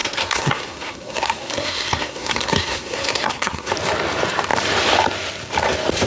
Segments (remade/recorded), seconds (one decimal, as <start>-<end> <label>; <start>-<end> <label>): 0.0-3.7 remade; 3.7-6.1 recorded